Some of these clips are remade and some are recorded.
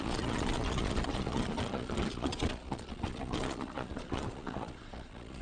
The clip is remade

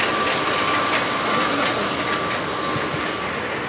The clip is recorded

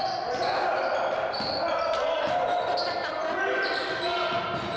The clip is recorded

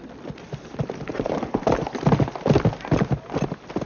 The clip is recorded